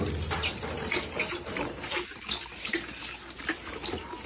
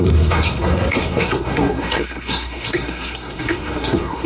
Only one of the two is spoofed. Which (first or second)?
second